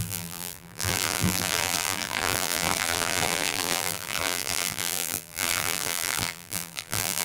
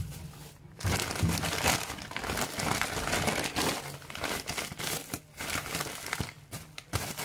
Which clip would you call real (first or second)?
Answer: second